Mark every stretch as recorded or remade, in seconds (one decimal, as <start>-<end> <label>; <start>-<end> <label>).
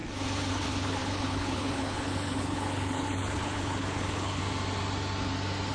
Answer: 0.0-0.5 recorded; 0.5-4.4 remade; 4.4-5.7 recorded